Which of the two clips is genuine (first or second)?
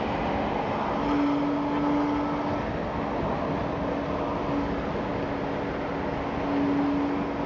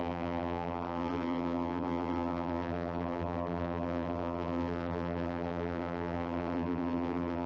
first